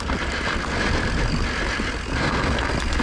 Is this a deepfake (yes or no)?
no